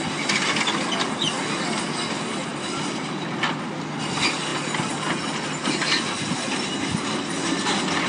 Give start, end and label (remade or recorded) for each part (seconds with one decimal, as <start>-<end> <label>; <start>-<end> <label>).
0.0-8.1 recorded

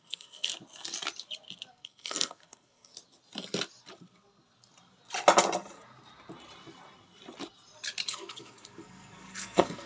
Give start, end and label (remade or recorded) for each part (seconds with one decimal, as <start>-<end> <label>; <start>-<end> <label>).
0.0-0.5 remade; 0.5-1.7 recorded; 1.7-2.9 remade; 2.9-8.1 recorded; 8.1-9.9 remade

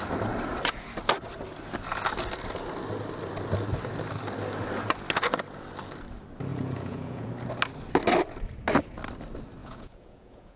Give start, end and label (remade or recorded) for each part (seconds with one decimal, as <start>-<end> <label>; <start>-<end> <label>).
0.0-6.5 recorded; 6.5-7.3 remade; 7.3-9.6 recorded; 9.6-10.6 remade

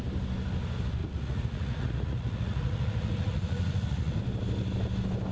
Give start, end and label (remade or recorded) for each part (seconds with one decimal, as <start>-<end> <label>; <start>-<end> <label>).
0.0-1.0 recorded; 1.0-4.2 remade; 4.2-5.3 recorded

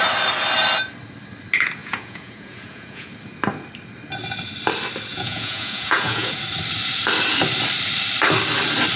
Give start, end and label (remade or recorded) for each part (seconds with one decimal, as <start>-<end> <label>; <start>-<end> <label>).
0.0-1.8 recorded; 1.8-3.1 remade; 3.1-5.1 recorded; 5.1-6.4 remade; 6.4-9.0 recorded

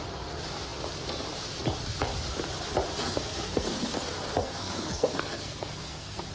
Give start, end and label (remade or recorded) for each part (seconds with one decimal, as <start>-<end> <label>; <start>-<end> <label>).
0.0-3.0 recorded; 3.0-3.8 remade; 3.8-4.4 recorded; 4.4-6.3 remade

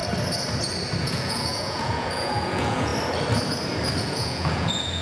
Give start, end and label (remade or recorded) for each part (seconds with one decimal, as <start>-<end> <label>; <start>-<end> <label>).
0.0-1.0 recorded; 1.0-2.9 remade; 2.9-4.0 recorded; 4.0-5.0 remade

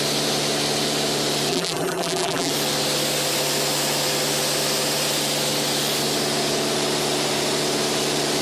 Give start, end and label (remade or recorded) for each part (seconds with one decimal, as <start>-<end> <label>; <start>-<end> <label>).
0.0-1.5 recorded; 1.5-2.5 remade; 2.5-8.4 recorded